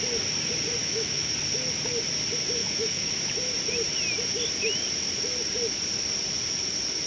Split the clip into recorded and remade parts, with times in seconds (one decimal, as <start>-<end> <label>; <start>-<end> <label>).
0.0-0.8 recorded; 0.8-1.3 remade; 1.3-2.6 recorded; 2.6-3.1 remade; 3.1-7.1 recorded